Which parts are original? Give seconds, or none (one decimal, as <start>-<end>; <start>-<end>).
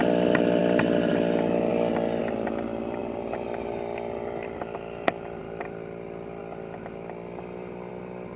1.7-2.2; 6.4-7.9